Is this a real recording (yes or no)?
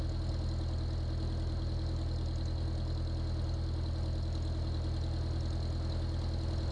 yes